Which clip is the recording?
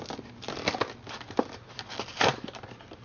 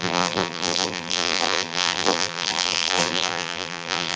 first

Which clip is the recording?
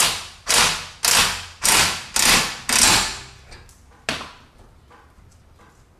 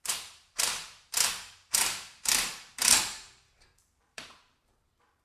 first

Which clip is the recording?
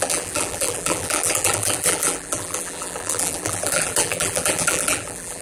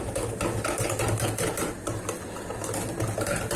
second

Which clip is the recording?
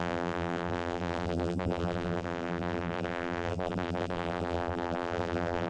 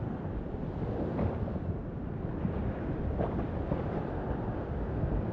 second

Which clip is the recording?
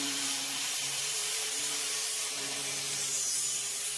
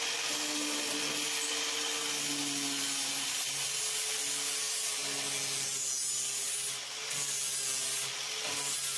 second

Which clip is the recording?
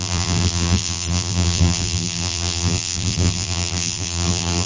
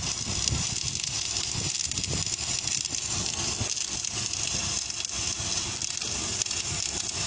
second